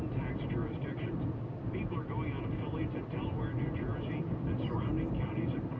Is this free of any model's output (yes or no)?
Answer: yes